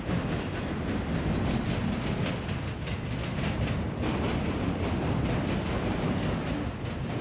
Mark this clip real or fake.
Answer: real